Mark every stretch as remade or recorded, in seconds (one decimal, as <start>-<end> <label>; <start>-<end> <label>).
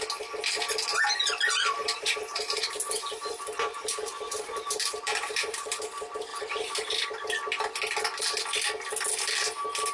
0.0-1.8 recorded; 1.8-5.8 remade; 5.8-6.3 recorded; 6.3-6.9 remade; 6.9-9.9 recorded